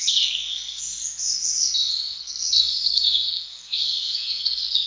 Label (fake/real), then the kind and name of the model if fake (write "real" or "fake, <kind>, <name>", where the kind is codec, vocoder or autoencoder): fake, codec, SNAC